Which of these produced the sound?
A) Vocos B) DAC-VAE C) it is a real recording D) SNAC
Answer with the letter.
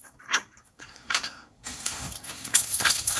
D